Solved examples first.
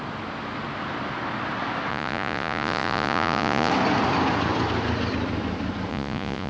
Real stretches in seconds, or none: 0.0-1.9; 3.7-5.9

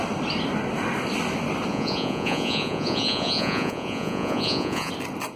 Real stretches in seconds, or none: 0.0-1.7; 4.9-5.4

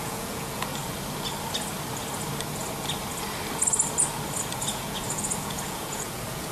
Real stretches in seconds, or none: 0.7-4.6

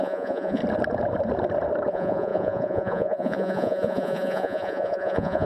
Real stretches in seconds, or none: 0.6-1.9

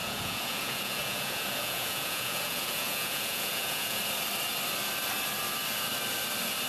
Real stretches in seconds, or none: 4.0-6.7

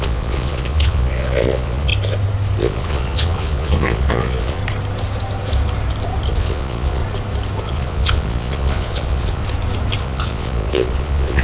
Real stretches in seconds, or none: 1.9-2.6; 4.6-6.3; 7.0-7.6; 9.4-10.0

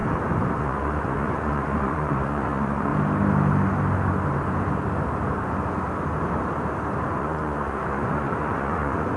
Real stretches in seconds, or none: 0.0-0.6; 2.9-7.1